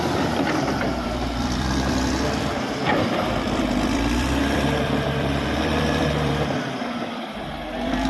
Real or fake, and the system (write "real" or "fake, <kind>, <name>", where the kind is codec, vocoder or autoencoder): fake, vocoder, BigVGAN v2